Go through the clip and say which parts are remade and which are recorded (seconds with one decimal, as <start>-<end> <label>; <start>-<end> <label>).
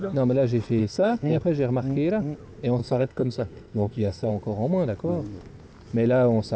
0.0-0.8 recorded; 0.8-1.4 remade; 1.4-2.8 recorded; 2.8-4.3 remade; 4.3-6.6 recorded